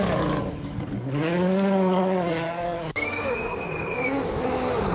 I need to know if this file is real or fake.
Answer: fake